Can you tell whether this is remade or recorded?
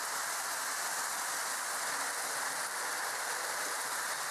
recorded